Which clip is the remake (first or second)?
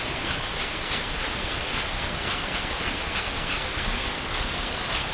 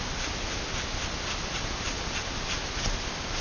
first